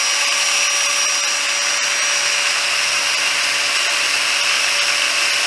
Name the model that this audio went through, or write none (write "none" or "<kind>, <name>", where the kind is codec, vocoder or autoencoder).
none